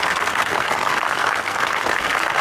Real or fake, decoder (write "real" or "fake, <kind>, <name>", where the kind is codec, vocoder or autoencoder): fake, codec, SNAC